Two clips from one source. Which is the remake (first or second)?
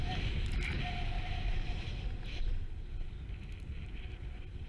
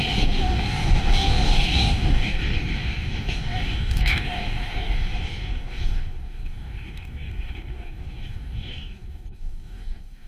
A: second